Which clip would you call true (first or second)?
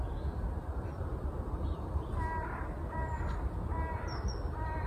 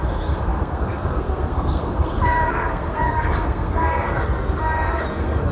first